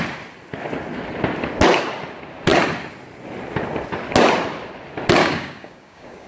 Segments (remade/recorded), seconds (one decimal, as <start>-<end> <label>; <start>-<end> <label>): 0.0-5.2 recorded; 5.2-6.3 remade